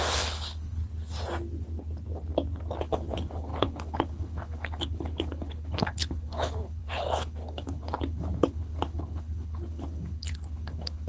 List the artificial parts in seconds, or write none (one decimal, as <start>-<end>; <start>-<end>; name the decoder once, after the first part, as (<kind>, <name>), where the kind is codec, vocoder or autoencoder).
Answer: 0.0-0.8 (codec, HILCodec); 2.8-11.1